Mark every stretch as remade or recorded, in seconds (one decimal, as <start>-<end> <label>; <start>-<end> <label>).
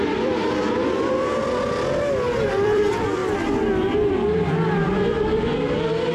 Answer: 0.0-1.3 remade; 1.3-2.5 recorded; 2.5-3.2 remade; 3.2-4.1 recorded; 4.1-6.1 remade